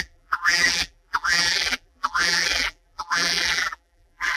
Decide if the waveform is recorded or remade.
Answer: remade